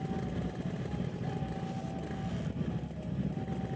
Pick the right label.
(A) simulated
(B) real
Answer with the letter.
B